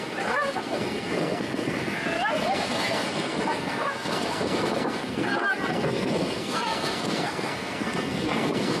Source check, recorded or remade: remade